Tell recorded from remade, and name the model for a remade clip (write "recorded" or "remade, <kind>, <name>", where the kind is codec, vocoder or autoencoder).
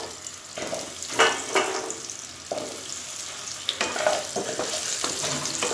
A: recorded